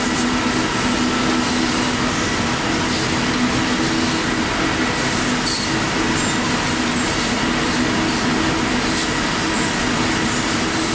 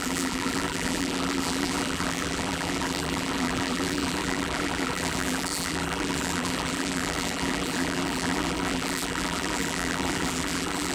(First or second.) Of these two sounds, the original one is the first